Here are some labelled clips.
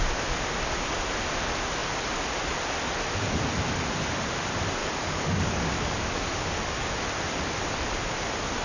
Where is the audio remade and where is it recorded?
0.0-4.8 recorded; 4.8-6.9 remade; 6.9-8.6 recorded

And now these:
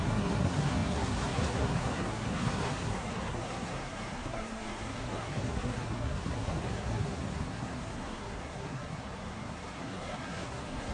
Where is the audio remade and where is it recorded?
0.0-10.9 remade

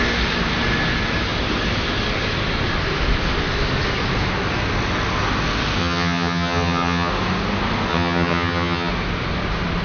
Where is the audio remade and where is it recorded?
0.0-5.8 recorded; 5.8-7.1 remade; 7.1-7.9 recorded; 7.9-8.9 remade; 8.9-9.8 recorded